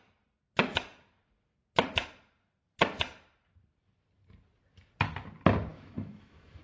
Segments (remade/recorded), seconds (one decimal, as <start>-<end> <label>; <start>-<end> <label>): 0.0-5.7 recorded; 5.7-6.6 remade